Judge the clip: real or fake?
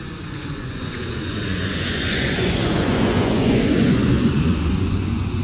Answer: fake